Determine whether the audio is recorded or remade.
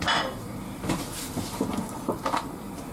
remade